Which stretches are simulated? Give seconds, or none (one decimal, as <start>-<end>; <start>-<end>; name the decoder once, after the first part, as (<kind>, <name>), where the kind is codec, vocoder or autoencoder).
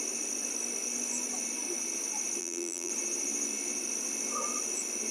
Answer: 2.4-2.9 (vocoder, BigVGAN v2)